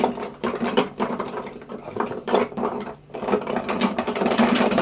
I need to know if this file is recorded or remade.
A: remade